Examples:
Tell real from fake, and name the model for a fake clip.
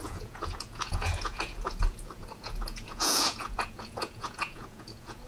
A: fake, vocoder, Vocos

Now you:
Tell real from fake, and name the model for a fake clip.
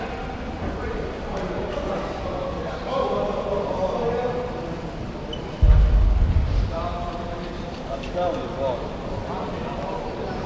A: real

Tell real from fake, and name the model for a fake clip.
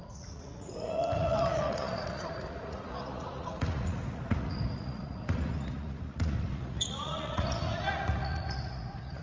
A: fake, vocoder, Vocos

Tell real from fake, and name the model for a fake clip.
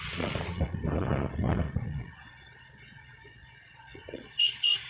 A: fake, vocoder, Vocos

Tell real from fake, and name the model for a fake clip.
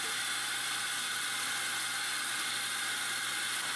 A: real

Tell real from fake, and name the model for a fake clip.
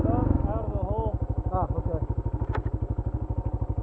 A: real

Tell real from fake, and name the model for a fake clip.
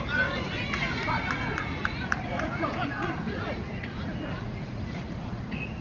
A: fake, vocoder, Vocos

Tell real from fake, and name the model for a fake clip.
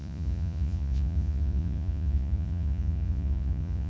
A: fake, vocoder, Vocos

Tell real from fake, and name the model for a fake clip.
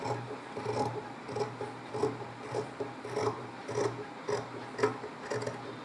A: real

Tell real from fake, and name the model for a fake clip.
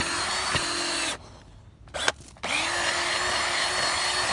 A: real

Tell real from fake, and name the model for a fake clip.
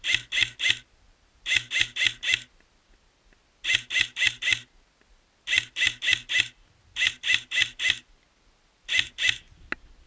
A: real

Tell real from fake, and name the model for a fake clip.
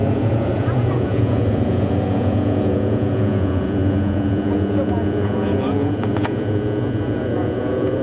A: fake, vocoder, Vocos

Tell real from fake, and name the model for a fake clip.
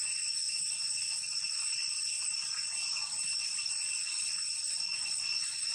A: fake, vocoder, Vocos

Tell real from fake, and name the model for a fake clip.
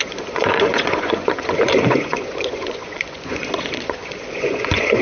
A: fake, vocoder, Vocos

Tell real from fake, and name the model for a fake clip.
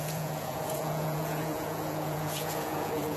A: fake, vocoder, Vocos